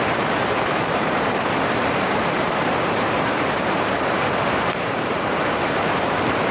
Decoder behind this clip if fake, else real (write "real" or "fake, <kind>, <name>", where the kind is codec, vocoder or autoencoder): fake, vocoder, BigVGAN v2